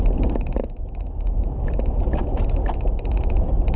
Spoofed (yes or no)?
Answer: no